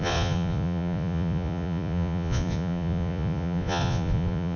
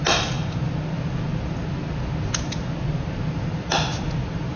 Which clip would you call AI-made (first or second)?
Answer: first